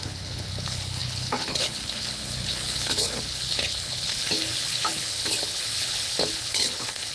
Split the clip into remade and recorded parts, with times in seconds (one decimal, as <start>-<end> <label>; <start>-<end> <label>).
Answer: 0.0-7.1 remade